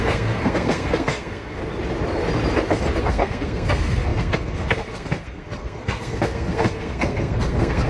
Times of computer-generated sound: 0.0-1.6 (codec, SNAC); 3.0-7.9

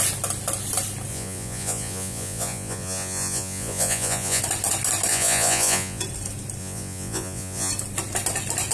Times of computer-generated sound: 1.1-4.4 (vocoder, Vocos); 5.1-6.0; 6.6-7.7

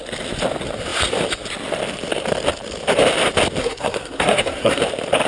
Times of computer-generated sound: 3.6-4.8 (codec, SNAC)

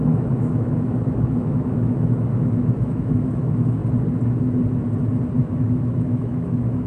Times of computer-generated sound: 0.0-3.8 (autoencoder, DAC-VAE); 5.4-6.9

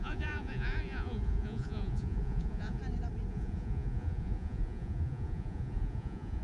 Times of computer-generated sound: 0.0-2.8 (vocoder, Vocos); 3.3-6.4

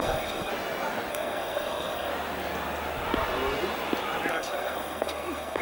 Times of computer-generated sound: 0.0-0.5 (codec, SNAC); 1.1-2.1; 4.3-5.6